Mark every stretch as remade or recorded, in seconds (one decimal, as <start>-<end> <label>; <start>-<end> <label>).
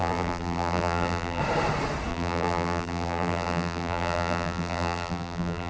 0.0-1.4 remade; 1.4-2.1 recorded; 2.1-5.7 remade